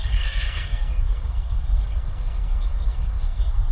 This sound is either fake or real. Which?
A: fake